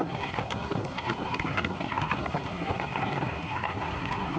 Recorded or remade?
remade